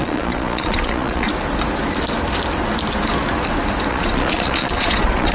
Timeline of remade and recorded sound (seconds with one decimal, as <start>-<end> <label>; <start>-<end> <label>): 0.0-1.3 remade; 1.3-3.9 recorded; 3.9-5.3 remade